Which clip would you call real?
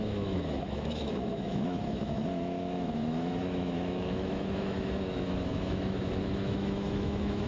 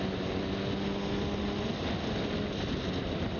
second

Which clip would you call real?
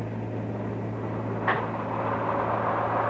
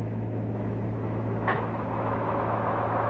first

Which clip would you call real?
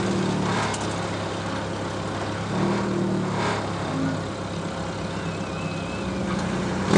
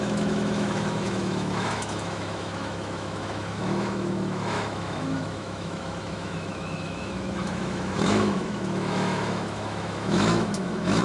first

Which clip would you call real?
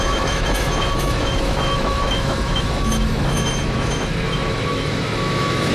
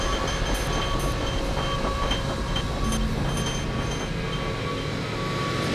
second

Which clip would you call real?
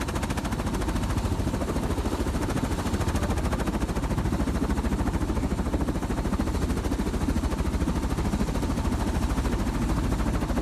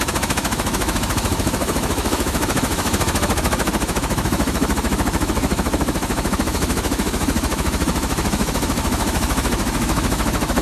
first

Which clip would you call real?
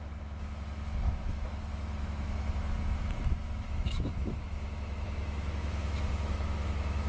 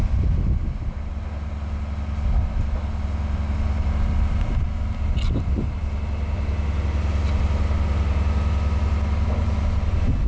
second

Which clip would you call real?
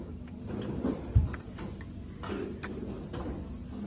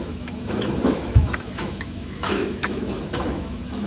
first